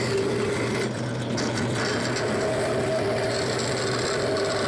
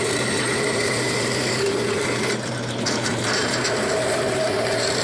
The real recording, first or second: first